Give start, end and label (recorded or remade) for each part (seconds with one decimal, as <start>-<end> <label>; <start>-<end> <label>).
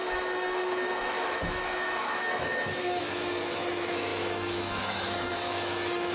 0.0-6.1 remade